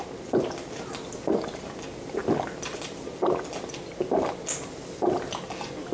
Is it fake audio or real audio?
real